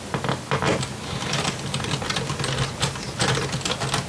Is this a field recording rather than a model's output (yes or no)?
yes